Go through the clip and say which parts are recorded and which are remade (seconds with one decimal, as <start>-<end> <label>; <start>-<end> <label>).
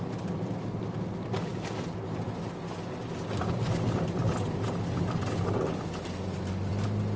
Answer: 0.0-7.2 recorded